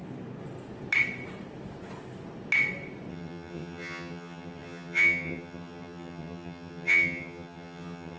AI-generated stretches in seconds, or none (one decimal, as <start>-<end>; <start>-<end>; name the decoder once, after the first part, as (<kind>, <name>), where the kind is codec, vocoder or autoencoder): 3.1-8.2 (vocoder, HiFi-GAN)